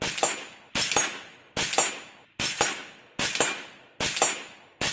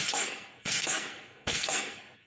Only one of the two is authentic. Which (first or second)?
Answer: first